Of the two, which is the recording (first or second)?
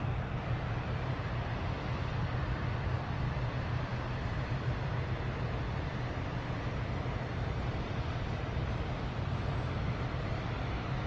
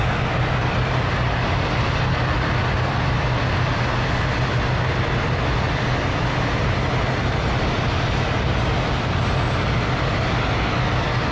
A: second